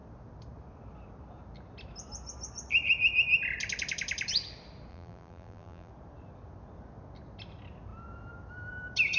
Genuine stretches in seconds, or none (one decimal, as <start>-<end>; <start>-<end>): 0.0-4.9; 5.9-9.2